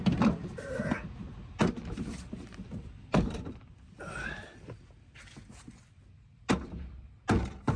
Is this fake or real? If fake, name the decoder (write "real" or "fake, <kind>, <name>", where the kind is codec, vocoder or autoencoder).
real